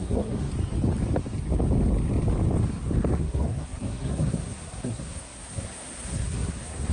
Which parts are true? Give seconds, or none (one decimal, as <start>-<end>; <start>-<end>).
0.5-3.2